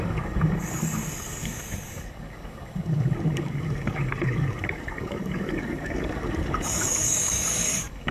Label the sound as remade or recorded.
remade